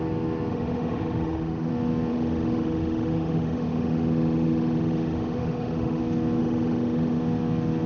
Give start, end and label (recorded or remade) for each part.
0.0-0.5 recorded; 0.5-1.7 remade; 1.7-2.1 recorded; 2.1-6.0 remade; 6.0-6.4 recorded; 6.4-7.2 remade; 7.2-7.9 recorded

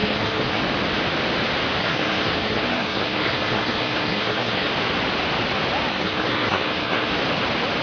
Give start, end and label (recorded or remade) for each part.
0.0-0.6 remade; 0.6-1.8 recorded; 1.8-4.7 remade; 4.7-5.9 recorded; 5.9-7.1 remade; 7.1-7.8 recorded

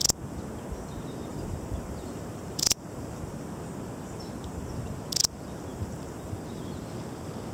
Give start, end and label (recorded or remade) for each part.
0.0-1.3 recorded; 1.3-3.2 remade; 3.2-5.7 recorded; 5.7-6.3 remade; 6.3-7.5 recorded

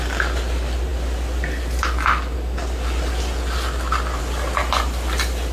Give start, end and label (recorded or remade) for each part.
0.0-5.5 recorded

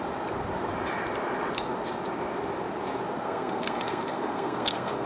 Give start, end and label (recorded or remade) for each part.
0.0-3.2 recorded; 3.2-5.1 remade

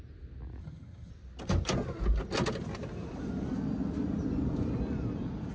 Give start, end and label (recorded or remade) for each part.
0.0-0.6 recorded; 0.6-1.1 remade; 1.1-5.5 recorded

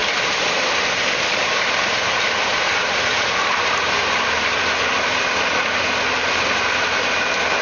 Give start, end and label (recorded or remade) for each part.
0.0-4.6 remade; 4.6-7.6 recorded